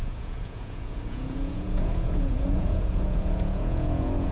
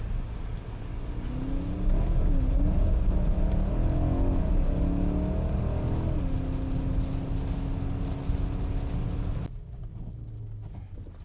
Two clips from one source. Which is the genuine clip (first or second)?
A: second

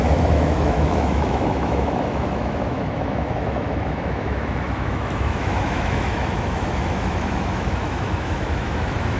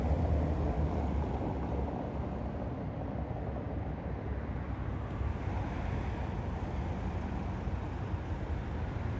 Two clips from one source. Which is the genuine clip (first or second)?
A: second